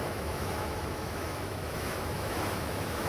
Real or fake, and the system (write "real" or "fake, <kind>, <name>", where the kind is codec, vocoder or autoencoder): fake, autoencoder, DAC-VAE